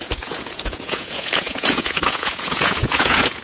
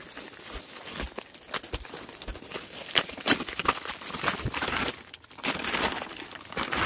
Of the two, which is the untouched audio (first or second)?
second